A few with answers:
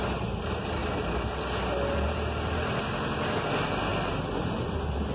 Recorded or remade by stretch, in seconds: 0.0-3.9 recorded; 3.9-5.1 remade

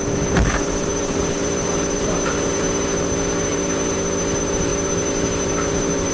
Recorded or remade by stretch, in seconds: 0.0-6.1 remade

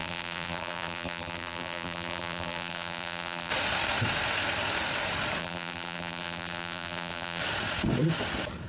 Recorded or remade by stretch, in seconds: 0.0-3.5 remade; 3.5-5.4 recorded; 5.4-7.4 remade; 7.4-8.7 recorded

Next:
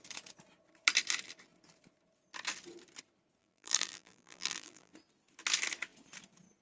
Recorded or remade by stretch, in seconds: 0.0-3.4 recorded; 3.4-4.9 remade; 4.9-6.6 recorded

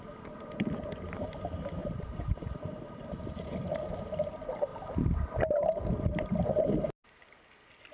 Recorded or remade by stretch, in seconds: 0.0-1.8 recorded; 1.8-3.8 remade; 3.8-7.9 recorded

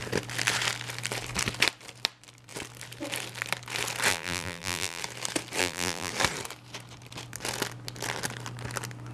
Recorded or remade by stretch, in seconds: 0.0-4.1 recorded; 4.1-5.0 remade; 5.0-5.6 recorded; 5.6-6.1 remade; 6.1-9.1 recorded